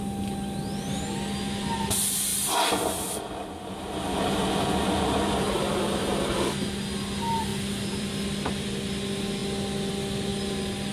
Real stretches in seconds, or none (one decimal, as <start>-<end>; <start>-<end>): 0.0-7.5; 8.1-10.3